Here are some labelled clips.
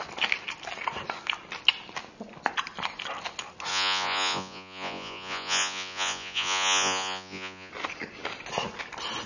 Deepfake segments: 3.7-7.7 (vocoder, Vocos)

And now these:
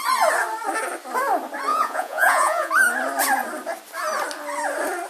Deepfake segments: 1.7-2.7 (vocoder, Vocos)

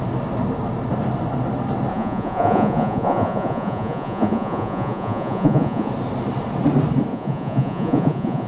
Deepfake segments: 1.9-5.9 (vocoder, Vocos); 7.1-8.5